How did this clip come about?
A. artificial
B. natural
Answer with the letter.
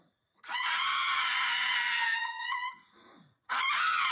A